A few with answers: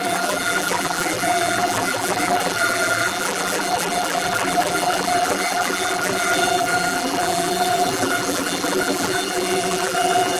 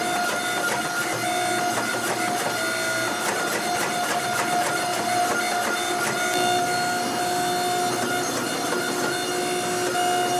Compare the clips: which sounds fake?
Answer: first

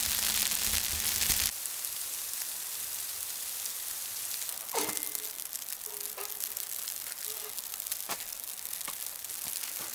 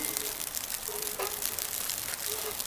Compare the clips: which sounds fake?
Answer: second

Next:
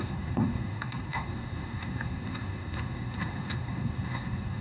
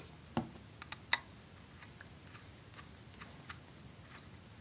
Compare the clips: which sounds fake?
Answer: first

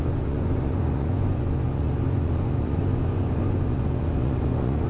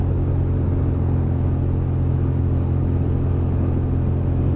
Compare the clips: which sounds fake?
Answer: first